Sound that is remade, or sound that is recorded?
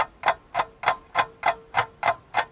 recorded